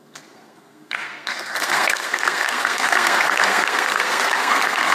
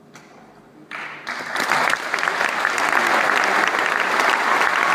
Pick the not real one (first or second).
first